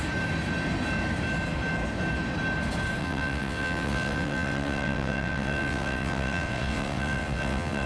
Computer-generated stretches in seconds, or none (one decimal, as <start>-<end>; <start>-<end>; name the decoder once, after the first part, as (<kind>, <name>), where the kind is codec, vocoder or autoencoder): 3.0-7.9 (vocoder, WaveNeXt)